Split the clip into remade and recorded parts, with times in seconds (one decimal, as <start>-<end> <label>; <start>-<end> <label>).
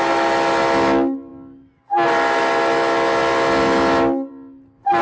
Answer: 0.0-5.0 recorded